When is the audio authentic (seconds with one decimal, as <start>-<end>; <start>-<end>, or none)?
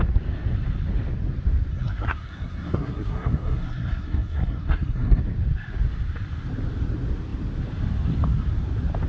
0.0-1.7; 5.2-9.1